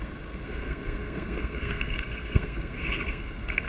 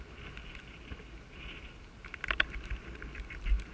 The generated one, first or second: first